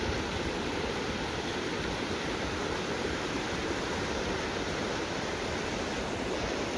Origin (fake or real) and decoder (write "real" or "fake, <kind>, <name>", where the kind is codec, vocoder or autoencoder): fake, vocoder, BigVGAN v2